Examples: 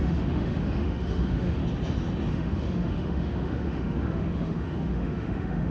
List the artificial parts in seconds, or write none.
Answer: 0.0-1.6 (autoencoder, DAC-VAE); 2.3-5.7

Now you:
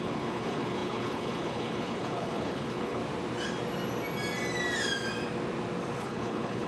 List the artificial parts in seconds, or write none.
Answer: 0.0-3.0 (codec, HILCodec); 6.0-6.7